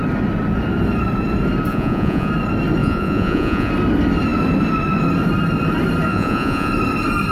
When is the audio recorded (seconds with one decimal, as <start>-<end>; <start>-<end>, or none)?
0.0-1.7; 2.3-2.8; 3.7-6.1; 6.7-7.3